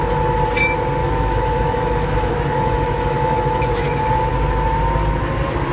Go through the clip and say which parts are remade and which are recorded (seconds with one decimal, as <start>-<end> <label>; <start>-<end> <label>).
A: 0.0-1.0 recorded; 1.0-4.0 remade; 4.0-5.7 recorded